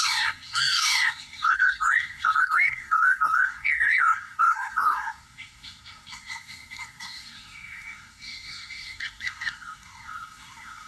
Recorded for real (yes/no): no